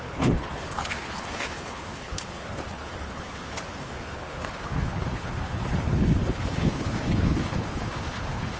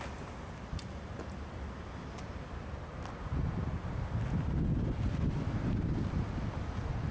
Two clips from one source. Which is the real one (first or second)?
second